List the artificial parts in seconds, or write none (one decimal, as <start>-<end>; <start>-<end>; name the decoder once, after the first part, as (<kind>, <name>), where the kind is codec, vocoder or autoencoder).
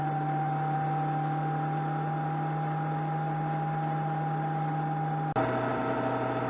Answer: none